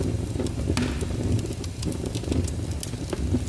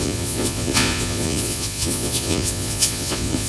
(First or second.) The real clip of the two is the first